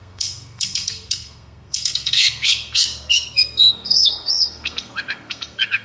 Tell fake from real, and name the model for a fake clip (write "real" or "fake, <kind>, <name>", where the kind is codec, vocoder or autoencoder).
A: fake, codec, SNAC